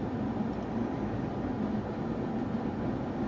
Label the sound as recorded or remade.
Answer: recorded